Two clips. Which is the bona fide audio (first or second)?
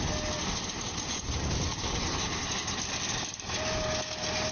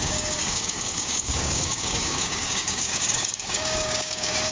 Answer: first